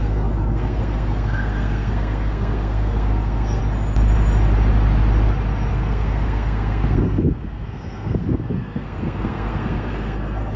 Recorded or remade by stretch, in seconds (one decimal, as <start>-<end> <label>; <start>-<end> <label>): 0.0-3.6 remade; 3.6-5.7 recorded; 5.7-10.6 remade